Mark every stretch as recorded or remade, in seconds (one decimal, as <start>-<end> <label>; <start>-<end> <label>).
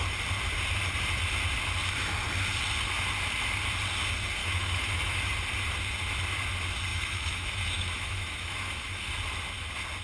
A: 0.0-4.4 recorded; 4.4-5.2 remade; 5.2-6.9 recorded; 6.9-9.1 remade; 9.1-10.0 recorded